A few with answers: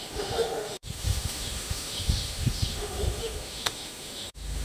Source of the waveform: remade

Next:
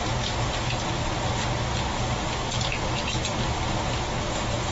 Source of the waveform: recorded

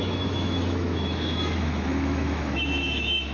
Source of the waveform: remade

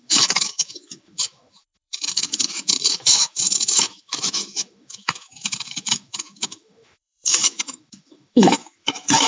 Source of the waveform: remade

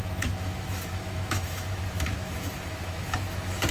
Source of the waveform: remade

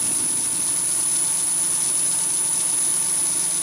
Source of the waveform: recorded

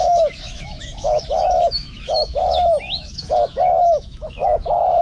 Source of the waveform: remade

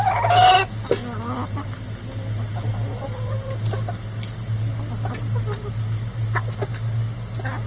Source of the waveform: recorded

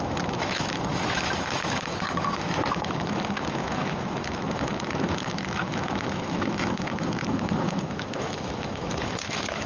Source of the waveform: remade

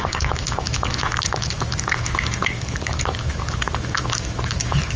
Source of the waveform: remade